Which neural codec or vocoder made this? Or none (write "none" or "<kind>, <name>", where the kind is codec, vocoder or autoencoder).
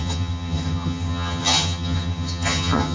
vocoder, HiFi-GAN